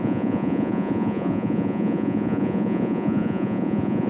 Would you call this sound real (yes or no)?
no